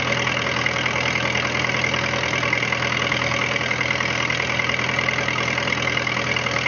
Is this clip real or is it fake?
real